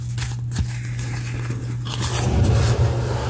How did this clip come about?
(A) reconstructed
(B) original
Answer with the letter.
B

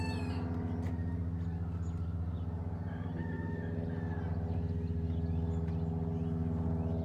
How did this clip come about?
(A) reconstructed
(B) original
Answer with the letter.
B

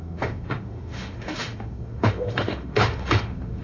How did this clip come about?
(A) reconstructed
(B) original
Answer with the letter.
A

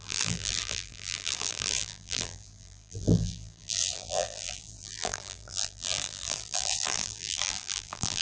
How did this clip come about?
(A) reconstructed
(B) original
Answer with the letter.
A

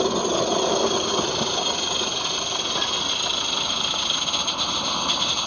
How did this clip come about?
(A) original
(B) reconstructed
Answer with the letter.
A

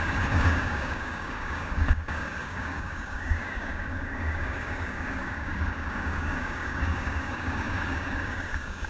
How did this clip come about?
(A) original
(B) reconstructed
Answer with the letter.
B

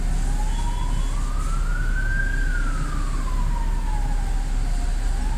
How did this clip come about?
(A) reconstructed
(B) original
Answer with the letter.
B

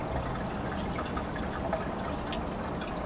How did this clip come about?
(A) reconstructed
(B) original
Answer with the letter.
B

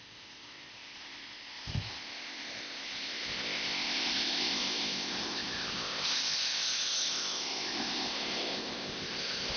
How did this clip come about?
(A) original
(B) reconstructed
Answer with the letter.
B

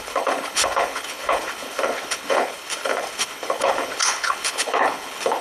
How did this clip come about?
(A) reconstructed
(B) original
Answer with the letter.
A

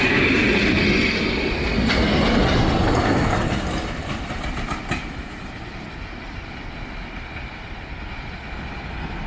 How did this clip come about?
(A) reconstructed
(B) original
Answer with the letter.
B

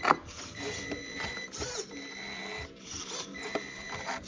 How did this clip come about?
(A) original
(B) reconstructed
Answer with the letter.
B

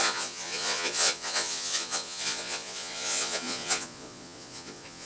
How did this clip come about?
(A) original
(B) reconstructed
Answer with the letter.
B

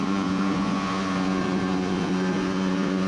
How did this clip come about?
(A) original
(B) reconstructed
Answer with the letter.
B